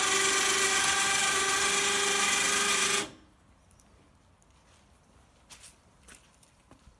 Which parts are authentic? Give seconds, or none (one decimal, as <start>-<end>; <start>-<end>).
0.0-7.0